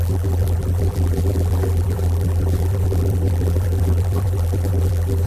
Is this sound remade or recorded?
remade